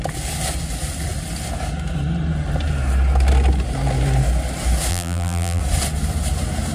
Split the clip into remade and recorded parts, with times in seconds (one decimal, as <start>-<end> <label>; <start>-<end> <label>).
0.0-4.9 recorded; 4.9-5.6 remade; 5.6-6.7 recorded